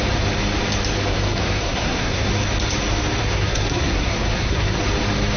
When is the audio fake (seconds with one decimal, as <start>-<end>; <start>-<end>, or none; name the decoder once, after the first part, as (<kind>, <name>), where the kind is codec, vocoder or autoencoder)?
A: 1.1-2.3 (codec, SNAC); 3.2-4.8